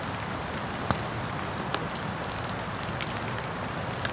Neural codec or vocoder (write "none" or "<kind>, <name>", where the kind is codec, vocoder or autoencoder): none